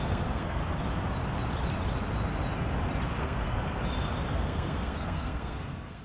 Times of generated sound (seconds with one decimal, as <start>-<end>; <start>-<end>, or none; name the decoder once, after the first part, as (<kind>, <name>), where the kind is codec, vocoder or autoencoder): 0.0-0.6 (codec, SNAC); 3.2-3.8; 4.3-6.0